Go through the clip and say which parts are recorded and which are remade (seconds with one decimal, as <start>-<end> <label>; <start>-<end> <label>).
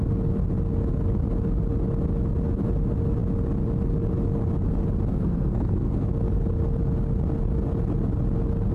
0.0-5.1 recorded; 5.1-6.1 remade; 6.1-8.7 recorded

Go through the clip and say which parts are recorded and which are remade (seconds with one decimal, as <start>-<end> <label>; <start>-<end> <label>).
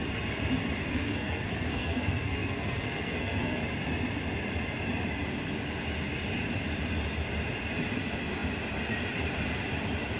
0.0-0.8 recorded; 0.8-3.6 remade; 3.6-10.2 recorded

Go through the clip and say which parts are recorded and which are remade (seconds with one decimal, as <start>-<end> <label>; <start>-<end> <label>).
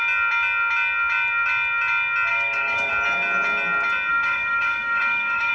0.0-2.3 recorded; 2.3-2.9 remade; 2.9-4.1 recorded; 4.1-5.5 remade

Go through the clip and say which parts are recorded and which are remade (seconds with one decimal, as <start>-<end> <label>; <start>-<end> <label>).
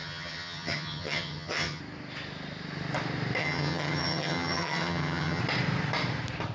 0.0-1.8 remade; 1.8-3.4 recorded; 3.4-5.4 remade; 5.4-6.5 recorded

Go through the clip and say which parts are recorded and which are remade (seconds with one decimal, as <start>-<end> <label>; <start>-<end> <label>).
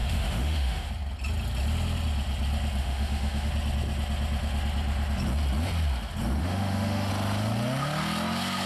0.0-0.9 remade; 0.9-2.8 recorded; 2.8-3.5 remade; 3.5-6.4 recorded; 6.4-7.1 remade; 7.1-8.7 recorded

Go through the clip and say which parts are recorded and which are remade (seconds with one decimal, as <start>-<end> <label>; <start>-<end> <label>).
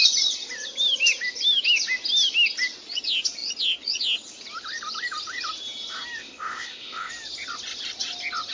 0.0-6.2 recorded; 6.2-7.1 remade; 7.1-8.5 recorded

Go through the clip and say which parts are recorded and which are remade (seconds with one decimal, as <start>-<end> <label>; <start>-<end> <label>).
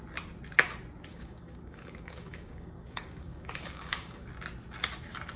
0.0-1.1 recorded; 1.1-4.3 remade; 4.3-5.4 recorded